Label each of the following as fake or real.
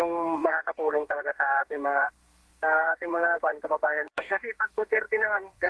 fake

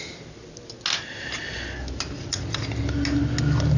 real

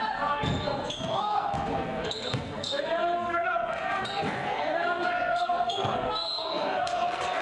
fake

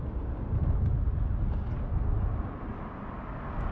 real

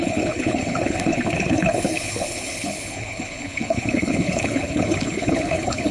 fake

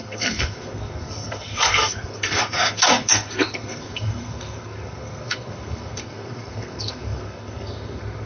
fake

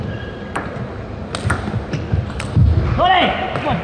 real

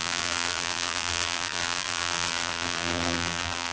fake